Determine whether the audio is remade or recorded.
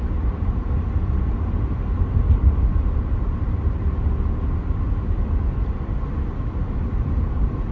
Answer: recorded